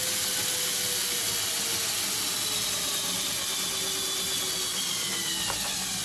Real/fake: real